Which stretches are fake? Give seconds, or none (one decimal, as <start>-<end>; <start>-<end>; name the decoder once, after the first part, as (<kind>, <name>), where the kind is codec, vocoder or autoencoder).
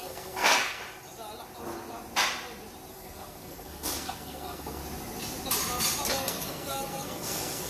0.0-0.8 (codec, SNAC); 2.9-4.8; 6.1-7.7